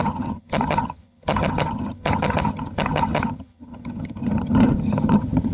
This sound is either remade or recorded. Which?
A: remade